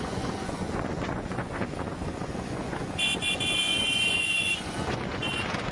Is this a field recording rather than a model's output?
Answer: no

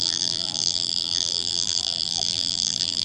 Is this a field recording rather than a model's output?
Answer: no